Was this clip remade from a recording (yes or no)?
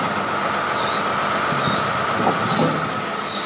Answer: no